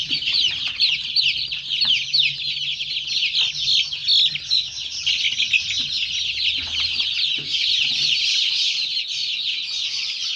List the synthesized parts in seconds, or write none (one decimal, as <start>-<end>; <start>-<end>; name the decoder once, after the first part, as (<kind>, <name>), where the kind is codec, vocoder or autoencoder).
none